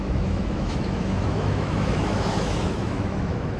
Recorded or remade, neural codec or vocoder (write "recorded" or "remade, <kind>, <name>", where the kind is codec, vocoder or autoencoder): remade, autoencoder, DAC-VAE